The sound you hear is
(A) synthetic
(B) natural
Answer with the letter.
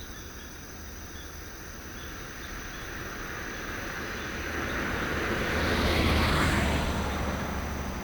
B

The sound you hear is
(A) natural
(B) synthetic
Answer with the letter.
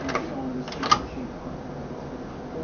A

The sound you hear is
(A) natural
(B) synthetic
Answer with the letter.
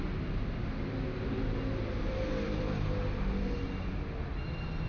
A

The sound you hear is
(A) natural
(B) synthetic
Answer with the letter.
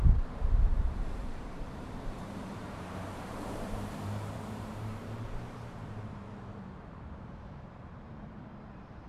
B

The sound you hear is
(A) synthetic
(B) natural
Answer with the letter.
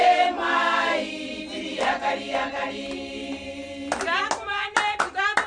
B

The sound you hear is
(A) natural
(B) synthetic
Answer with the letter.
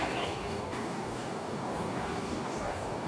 B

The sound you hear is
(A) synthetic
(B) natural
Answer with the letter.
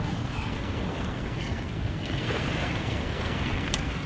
A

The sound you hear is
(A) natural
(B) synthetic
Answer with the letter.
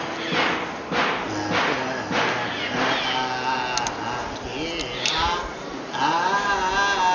A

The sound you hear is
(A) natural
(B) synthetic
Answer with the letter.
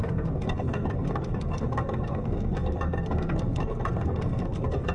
B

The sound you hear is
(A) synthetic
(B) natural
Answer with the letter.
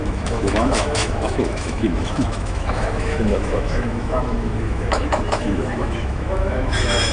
A